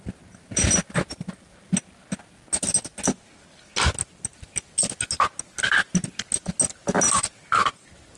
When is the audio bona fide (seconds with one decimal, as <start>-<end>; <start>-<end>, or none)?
0.0-8.2

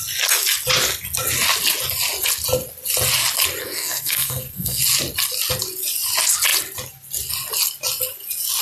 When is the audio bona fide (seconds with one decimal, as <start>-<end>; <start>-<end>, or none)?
0.0-3.6; 4.8-8.6

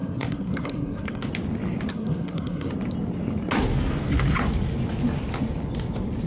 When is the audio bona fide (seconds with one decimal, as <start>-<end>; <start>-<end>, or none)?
1.3-1.9; 2.7-6.3